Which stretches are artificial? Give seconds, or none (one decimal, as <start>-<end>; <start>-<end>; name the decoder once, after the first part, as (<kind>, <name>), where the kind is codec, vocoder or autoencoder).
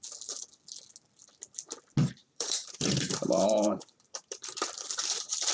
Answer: 2.2-5.5 (vocoder, BigVGAN v2)